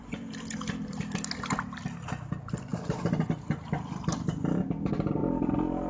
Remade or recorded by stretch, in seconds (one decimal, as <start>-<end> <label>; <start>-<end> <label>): 0.0-5.9 recorded